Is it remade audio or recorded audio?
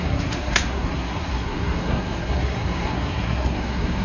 remade